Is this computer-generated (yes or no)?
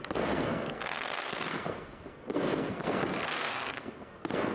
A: yes